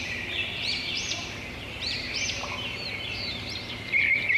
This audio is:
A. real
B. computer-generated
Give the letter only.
B